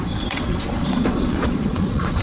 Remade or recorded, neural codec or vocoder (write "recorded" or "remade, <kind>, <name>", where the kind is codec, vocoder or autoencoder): remade, vocoder, Vocos